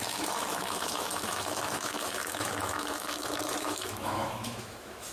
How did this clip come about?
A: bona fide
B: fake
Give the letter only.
B